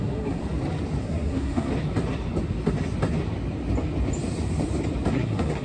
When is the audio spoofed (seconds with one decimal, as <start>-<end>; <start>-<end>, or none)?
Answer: 0.0-0.4; 1.0-1.7; 5.1-5.6